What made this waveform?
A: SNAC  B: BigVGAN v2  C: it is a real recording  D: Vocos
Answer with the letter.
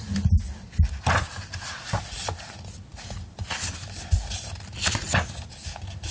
C